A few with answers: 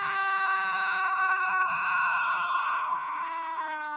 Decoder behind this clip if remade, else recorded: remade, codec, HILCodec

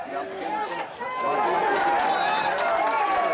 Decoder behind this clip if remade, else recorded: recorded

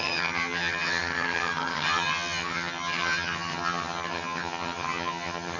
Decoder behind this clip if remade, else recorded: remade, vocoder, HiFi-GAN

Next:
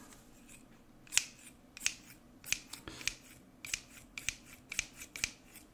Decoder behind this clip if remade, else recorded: recorded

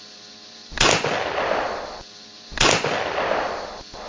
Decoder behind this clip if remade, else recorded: recorded